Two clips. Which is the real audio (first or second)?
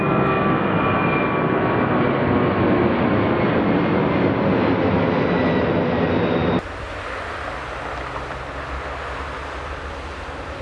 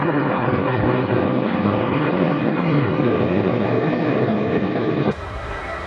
first